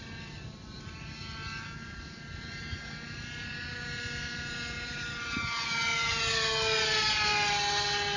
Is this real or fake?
real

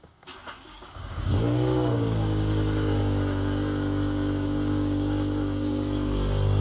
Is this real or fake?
fake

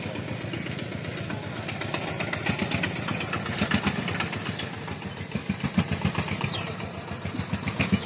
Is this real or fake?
real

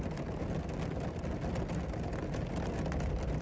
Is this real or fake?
real